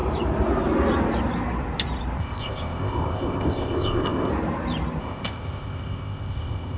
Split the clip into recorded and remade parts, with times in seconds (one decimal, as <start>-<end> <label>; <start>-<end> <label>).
0.0-2.2 recorded; 2.2-4.3 remade; 4.3-5.0 recorded; 5.0-6.8 remade